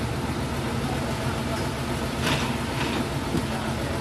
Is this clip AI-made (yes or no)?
no